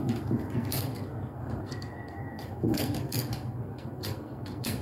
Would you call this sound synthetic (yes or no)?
yes